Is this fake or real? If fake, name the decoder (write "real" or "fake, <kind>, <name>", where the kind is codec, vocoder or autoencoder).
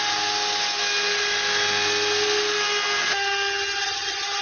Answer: real